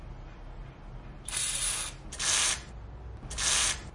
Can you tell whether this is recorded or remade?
recorded